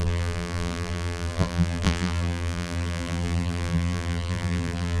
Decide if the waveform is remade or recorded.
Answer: remade